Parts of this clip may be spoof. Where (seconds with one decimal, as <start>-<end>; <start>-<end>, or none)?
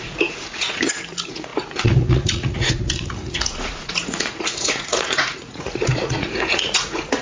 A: 0.0-7.2